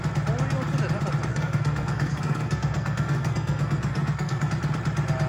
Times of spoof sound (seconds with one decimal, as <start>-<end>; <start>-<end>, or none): 1.3-4.5